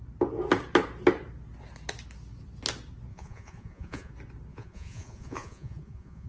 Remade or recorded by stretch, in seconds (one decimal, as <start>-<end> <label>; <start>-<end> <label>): 0.0-3.1 recorded; 3.1-4.1 remade; 4.1-4.5 recorded; 4.5-6.3 remade